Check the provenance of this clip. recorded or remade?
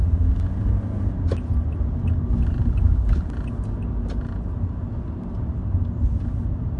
recorded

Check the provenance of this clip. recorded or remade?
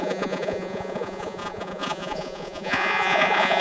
remade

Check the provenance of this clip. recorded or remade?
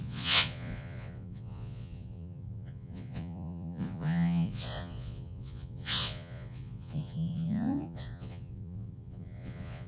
remade